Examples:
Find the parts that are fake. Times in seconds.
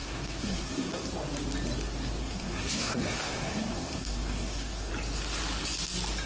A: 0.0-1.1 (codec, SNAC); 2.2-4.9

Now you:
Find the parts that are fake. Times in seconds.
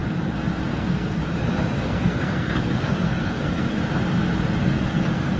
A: 0.7-1.2 (codec, SNAC); 1.8-3.8; 4.6-5.4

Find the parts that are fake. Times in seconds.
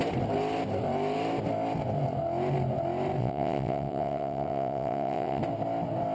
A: 3.2-5.4 (vocoder, WaveNeXt)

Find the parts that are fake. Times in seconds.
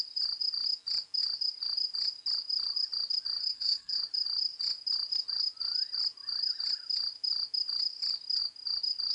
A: 3.4-4.0 (codec, SNAC)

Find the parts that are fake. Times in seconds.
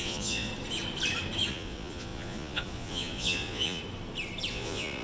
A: 0.0-0.5 (vocoder, Vocos); 1.5-3.8; 4.5-5.0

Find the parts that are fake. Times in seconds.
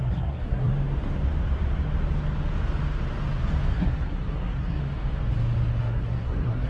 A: 0.0-0.7 (codec, SNAC); 3.7-4.8; 5.8-6.7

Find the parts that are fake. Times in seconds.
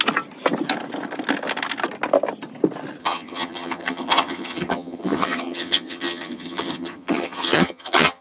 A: 3.0-8.2 (vocoder, HiFi-GAN)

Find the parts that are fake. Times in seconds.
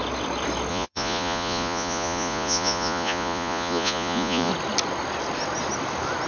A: 0.7-4.5 (vocoder, Vocos)